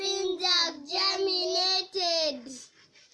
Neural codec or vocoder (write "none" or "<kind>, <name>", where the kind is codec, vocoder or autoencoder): none